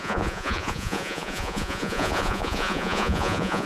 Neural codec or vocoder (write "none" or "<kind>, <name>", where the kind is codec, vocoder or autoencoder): vocoder, Vocos